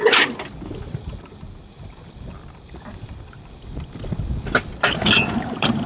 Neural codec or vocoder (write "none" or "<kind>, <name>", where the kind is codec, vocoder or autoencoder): none